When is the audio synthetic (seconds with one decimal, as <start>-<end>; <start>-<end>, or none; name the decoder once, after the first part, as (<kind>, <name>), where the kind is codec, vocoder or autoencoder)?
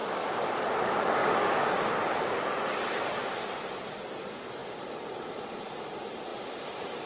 1.2-2.5 (codec, DAC)